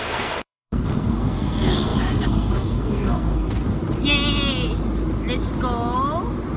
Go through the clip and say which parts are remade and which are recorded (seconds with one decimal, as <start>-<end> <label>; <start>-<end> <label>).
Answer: 0.0-3.8 remade; 3.8-6.6 recorded